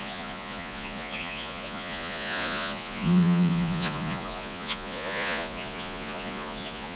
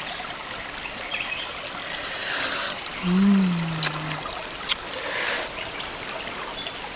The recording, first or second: second